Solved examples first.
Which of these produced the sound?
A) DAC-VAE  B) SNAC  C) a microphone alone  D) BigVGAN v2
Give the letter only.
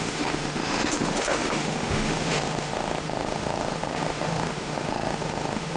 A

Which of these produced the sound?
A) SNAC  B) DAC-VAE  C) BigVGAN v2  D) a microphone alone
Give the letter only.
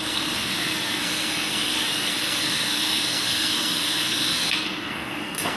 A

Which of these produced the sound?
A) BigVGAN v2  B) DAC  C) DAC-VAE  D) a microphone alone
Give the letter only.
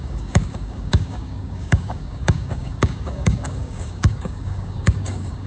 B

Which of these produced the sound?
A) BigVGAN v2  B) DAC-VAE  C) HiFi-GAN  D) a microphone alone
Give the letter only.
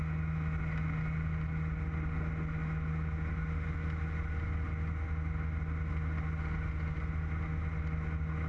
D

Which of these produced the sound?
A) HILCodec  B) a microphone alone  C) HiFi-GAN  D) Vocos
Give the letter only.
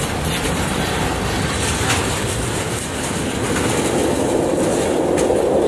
B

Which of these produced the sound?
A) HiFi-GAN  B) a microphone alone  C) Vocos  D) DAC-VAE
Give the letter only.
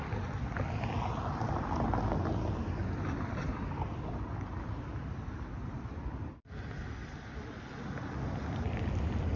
B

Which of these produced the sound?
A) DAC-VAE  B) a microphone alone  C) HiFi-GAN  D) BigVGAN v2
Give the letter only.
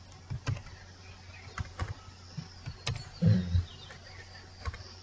B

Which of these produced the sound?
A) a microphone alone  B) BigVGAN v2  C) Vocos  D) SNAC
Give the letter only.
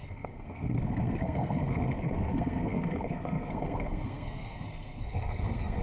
D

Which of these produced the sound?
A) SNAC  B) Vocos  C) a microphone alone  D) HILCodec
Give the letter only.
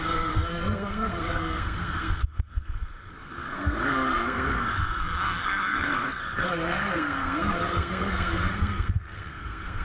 A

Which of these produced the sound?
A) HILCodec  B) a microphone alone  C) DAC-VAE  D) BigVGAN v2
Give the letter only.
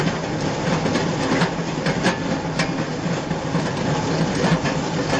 B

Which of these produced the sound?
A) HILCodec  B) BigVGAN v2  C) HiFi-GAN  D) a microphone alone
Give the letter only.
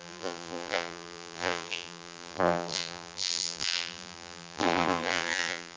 B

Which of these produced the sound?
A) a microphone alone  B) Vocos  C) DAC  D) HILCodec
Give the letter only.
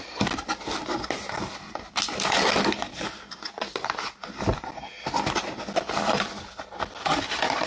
A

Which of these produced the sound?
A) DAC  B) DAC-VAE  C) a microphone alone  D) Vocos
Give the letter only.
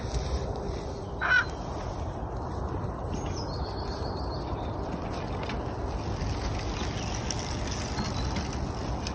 C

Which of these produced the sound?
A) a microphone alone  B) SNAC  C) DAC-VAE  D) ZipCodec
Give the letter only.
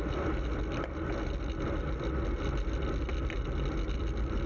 A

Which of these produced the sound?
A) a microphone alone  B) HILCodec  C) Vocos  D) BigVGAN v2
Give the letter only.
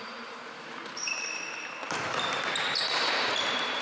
D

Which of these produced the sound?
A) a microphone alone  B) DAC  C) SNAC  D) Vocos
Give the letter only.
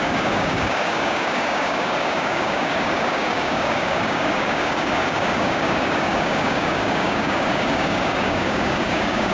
B